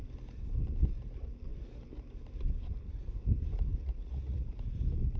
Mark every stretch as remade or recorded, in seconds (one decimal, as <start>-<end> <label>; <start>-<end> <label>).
0.0-3.8 recorded; 3.8-4.4 remade; 4.4-5.2 recorded